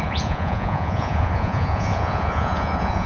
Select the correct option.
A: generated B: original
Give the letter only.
A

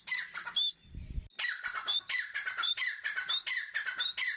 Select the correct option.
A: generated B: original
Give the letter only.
B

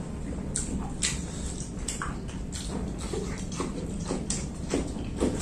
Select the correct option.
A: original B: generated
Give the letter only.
A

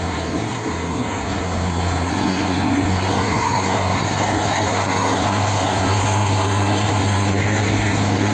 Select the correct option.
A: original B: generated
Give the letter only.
B